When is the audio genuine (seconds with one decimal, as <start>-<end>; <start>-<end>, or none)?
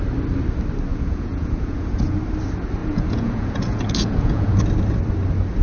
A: 0.0-0.9; 2.2-2.8; 4.6-5.6